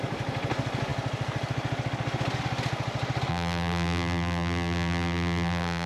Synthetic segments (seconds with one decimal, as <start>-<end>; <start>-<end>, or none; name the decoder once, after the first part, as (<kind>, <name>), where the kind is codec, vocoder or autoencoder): 3.3-5.9 (vocoder, BigVGAN v2)

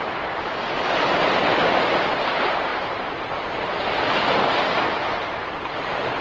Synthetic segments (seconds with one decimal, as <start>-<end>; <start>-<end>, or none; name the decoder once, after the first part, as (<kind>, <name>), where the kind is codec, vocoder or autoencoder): 2.7-3.3 (vocoder, BigVGAN v2)

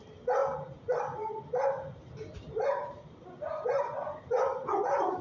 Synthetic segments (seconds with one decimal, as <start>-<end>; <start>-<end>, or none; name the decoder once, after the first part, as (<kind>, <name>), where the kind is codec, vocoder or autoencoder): none

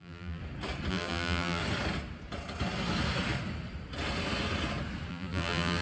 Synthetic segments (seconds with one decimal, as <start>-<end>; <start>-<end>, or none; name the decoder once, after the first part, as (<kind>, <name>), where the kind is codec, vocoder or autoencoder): 0.0-0.4 (vocoder, BigVGAN v2); 0.9-1.6; 5.1-5.8

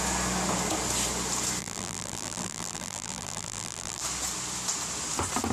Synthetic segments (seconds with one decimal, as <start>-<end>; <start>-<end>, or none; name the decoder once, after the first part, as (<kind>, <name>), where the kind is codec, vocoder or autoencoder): 1.6-4.0 (vocoder, BigVGAN v2)